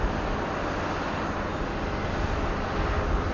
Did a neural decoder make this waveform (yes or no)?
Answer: no